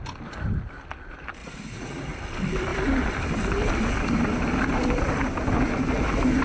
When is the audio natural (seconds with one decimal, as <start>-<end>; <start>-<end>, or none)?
0.0-1.4; 2.0-6.4